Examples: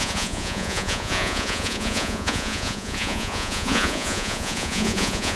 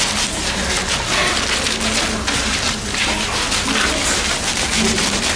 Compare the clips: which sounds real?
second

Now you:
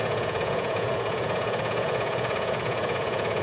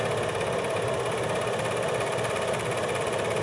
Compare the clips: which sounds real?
second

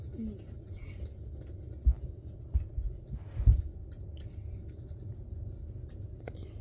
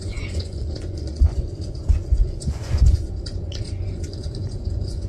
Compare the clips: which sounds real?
first